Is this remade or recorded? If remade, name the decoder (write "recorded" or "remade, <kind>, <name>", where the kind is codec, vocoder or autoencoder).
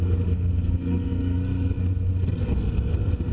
remade, codec, SNAC